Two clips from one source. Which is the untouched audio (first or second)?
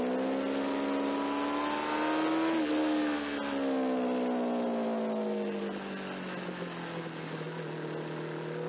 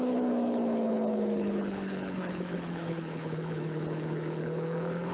first